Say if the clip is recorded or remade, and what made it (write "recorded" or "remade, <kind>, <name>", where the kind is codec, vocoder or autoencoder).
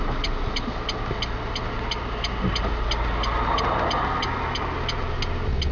recorded